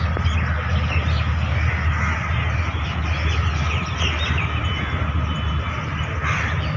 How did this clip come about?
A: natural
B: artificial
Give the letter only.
A